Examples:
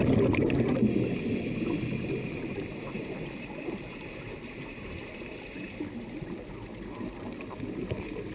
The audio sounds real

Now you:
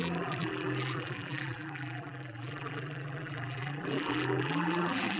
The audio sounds fake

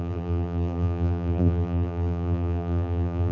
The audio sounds fake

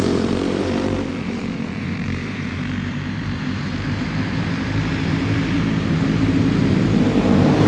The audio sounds fake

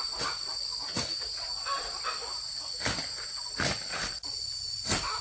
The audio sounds real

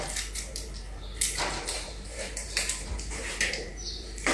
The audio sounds fake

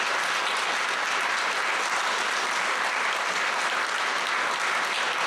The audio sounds real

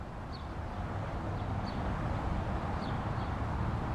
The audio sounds real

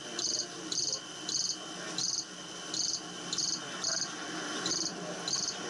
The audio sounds real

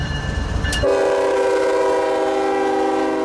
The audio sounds real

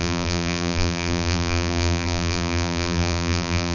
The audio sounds fake